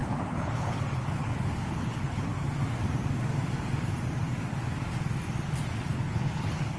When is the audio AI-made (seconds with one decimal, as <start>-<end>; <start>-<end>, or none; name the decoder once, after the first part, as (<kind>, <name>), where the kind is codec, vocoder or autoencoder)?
0.0-2.3 (codec, HILCodec); 5.9-6.8